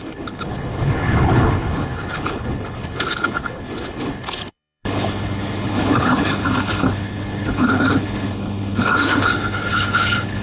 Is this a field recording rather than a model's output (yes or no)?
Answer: no